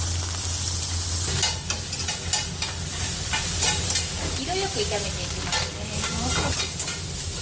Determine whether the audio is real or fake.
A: real